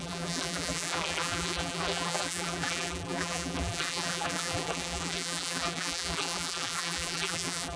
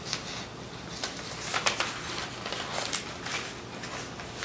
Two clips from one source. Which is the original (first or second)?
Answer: second